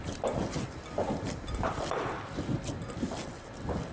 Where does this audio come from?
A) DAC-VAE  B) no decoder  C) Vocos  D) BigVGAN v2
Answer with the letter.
B